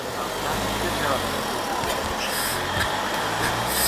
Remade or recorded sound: recorded